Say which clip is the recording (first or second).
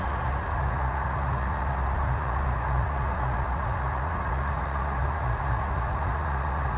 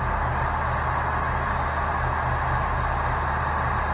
second